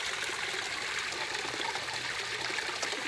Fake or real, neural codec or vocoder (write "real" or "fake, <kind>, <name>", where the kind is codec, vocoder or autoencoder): real